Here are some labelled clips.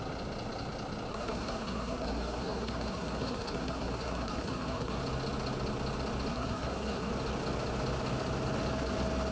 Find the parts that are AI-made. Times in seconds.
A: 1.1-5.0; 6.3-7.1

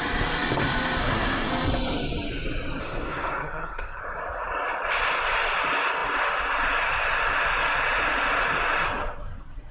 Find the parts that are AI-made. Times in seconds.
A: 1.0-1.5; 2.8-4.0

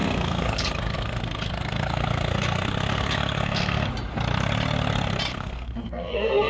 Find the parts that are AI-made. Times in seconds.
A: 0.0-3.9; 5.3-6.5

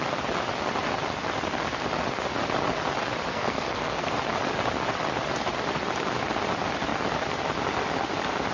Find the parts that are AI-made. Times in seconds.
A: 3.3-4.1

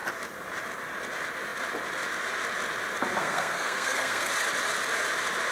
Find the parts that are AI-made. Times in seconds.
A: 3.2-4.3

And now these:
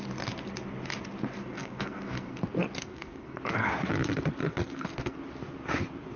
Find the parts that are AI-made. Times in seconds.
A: 1.4-2.4; 2.8-3.4; 4.4-5.2